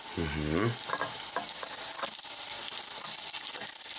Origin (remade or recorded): recorded